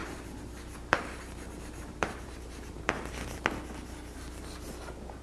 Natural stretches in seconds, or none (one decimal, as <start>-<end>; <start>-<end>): 3.1-5.2